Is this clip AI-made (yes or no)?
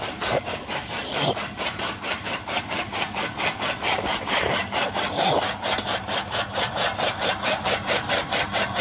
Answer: yes